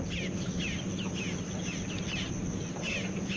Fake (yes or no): no